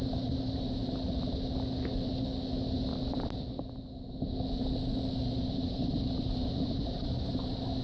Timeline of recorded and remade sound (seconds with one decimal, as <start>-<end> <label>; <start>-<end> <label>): 0.0-0.8 remade; 0.8-5.5 recorded; 5.5-7.8 remade